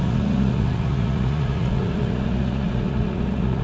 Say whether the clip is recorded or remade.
remade